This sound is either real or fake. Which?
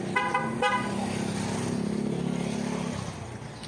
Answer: real